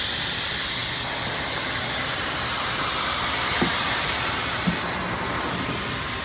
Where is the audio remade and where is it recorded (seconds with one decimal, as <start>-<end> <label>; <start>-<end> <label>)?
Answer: 0.0-6.2 recorded